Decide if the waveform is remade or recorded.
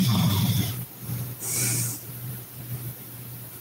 remade